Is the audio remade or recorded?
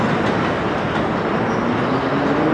recorded